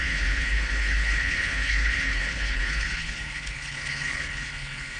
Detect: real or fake fake